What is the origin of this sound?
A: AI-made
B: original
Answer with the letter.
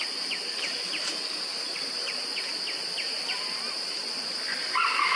B